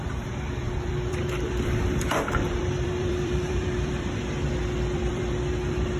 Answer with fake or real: fake